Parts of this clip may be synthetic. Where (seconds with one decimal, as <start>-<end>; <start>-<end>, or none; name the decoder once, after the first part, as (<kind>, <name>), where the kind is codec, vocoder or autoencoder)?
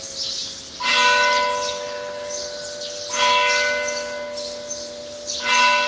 none